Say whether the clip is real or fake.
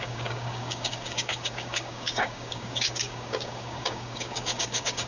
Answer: fake